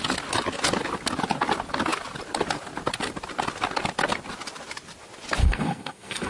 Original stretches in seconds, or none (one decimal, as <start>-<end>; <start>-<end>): 0.0-5.4